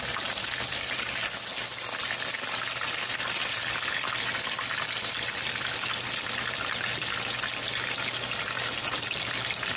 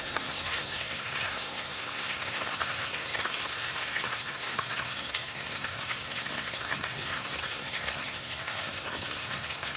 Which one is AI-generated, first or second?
second